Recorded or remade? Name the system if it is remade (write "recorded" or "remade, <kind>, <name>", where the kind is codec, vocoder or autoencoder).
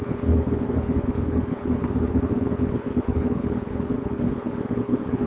remade, codec, HILCodec